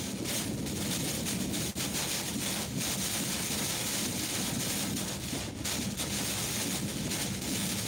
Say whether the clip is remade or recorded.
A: recorded